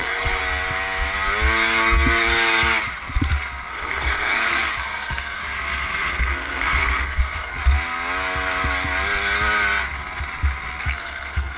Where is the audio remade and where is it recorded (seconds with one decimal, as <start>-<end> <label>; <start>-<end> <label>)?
0.0-0.4 remade; 0.4-3.7 recorded; 3.7-5.4 remade; 5.4-6.2 recorded; 6.2-7.6 remade; 7.6-10.8 recorded; 10.8-11.6 remade